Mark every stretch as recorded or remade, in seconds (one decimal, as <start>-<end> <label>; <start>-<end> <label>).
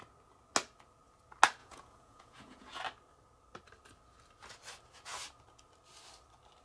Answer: 0.0-1.6 recorded; 1.6-2.8 remade; 2.8-6.6 recorded